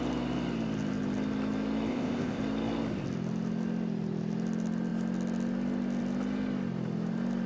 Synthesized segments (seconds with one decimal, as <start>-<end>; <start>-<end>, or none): 1.9-2.4